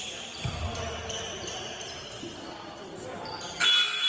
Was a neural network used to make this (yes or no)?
no